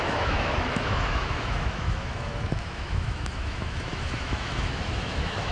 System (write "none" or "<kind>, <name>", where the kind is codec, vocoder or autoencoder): autoencoder, DAC-VAE